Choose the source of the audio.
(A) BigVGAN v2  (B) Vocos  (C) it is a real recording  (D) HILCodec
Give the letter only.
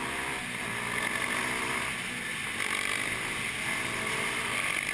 C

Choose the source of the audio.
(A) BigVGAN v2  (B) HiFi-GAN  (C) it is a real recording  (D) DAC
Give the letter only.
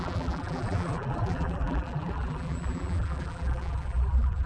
A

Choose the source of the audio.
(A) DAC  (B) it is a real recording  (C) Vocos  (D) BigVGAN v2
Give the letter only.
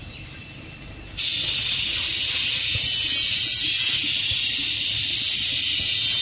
B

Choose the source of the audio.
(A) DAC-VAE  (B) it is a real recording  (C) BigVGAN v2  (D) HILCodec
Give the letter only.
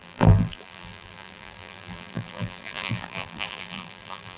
C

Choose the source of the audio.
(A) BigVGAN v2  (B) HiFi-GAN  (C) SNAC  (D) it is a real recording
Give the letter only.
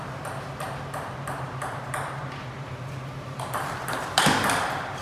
A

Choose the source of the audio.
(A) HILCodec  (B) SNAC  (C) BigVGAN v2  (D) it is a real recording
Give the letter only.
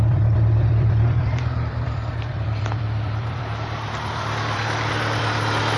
C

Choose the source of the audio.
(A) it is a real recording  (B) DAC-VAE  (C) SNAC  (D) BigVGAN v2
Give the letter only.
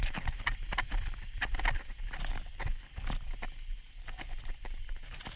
A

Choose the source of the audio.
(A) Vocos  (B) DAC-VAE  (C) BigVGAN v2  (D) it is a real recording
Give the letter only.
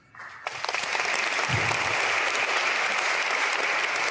D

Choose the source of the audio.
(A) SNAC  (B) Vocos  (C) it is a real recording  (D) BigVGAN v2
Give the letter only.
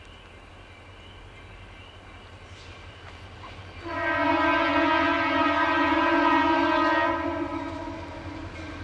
C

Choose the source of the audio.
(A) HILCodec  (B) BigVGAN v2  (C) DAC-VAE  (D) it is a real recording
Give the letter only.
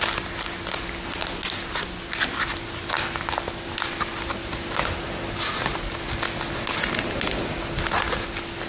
D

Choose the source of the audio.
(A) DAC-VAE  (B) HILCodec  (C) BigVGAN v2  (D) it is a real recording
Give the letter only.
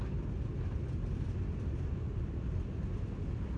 D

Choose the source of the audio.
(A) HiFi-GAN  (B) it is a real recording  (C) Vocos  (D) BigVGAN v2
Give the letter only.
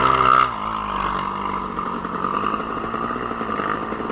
B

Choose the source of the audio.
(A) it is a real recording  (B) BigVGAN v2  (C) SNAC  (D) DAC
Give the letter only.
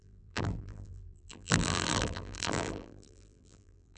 B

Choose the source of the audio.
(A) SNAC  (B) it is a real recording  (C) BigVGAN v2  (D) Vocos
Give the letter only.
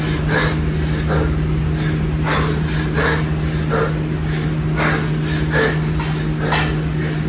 B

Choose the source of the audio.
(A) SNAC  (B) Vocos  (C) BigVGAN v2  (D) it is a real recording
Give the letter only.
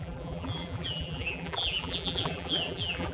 C